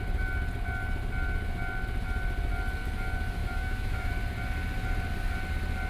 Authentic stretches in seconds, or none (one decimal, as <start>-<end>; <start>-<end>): 0.0-3.4; 4.1-5.9